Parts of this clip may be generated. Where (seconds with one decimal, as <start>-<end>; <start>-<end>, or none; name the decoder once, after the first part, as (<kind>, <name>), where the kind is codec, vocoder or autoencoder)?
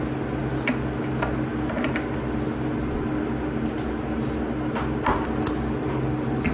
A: none